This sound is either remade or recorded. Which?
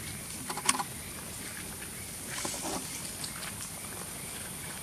recorded